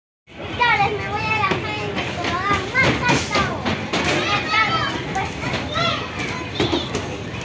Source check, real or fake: real